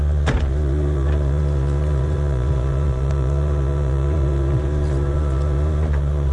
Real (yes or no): no